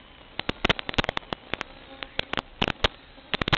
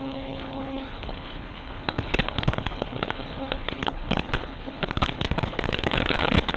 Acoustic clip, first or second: first